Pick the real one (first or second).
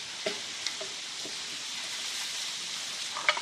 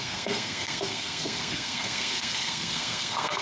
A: first